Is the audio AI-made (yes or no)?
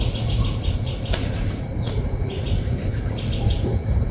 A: yes